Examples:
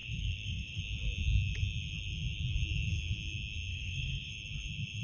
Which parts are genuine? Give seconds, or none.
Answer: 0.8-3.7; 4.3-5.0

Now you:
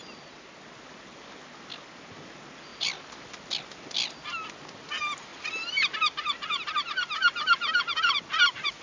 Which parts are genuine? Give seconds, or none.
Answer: 0.0-2.7; 3.4-5.3; 6.9-8.8

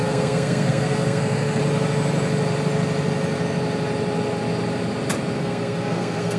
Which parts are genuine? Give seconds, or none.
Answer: 1.6-5.4

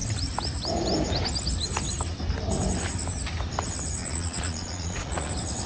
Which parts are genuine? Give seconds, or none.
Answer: 0.0-4.0; 5.3-5.7

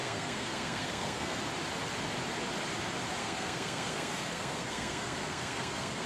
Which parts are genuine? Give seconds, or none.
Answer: 1.4-3.2